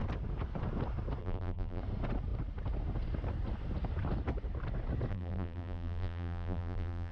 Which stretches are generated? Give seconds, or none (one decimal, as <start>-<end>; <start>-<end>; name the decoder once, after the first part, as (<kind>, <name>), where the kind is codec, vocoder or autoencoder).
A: 1.2-1.8 (vocoder, BigVGAN v2); 5.1-7.1

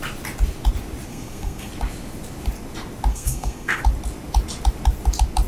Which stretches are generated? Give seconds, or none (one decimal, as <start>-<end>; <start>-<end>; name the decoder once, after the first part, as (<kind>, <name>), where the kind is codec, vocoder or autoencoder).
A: 1.1-1.7 (codec, SNAC); 3.1-3.8